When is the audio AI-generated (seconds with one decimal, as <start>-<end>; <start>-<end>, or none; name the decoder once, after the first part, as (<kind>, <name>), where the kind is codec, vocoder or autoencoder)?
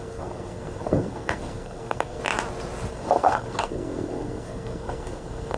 0.0-2.2 (codec, SNAC); 2.9-5.6